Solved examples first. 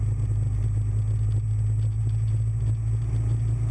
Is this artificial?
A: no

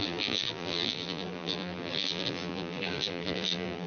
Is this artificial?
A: yes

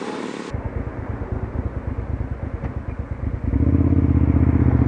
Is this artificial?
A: no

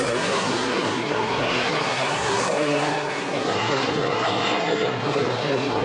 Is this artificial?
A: yes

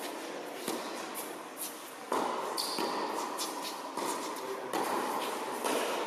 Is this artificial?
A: no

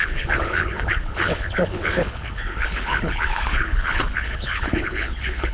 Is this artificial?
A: yes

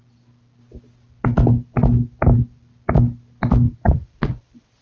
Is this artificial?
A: no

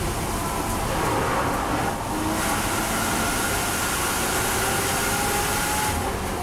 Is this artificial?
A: no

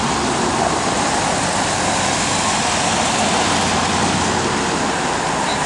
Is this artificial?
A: no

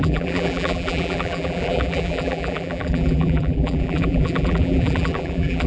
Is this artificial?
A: yes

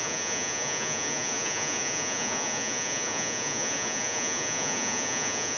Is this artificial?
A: yes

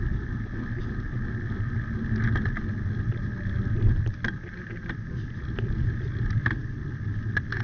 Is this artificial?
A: no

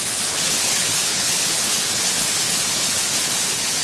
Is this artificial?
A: yes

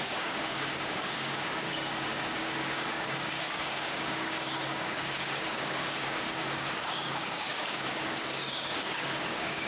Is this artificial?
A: yes